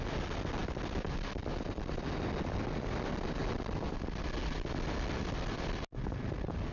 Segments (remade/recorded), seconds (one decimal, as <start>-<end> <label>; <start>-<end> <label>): 0.0-6.7 recorded